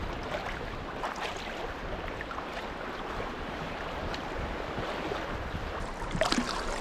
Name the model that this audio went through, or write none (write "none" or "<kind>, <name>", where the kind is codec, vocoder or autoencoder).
none